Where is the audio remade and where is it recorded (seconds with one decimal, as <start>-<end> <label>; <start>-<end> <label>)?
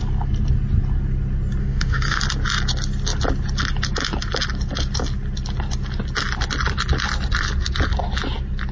0.0-1.6 recorded; 1.6-2.2 remade; 2.2-8.7 recorded